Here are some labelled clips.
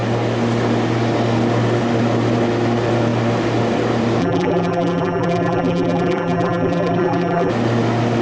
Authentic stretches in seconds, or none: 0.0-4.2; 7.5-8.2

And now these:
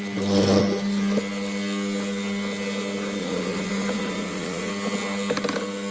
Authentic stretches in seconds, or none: 0.0-3.2; 4.7-5.9

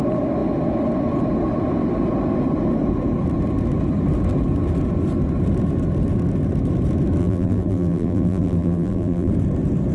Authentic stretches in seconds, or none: 0.0-7.2; 9.3-9.9

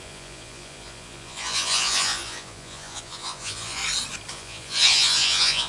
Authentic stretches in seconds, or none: 3.8-4.3

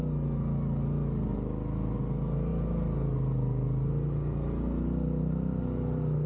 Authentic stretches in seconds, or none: 0.0-6.3

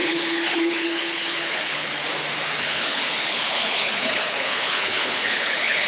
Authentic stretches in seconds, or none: 1.9-2.5